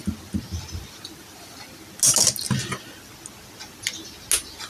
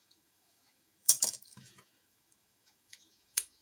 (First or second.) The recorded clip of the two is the first